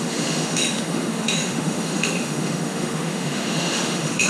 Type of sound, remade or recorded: remade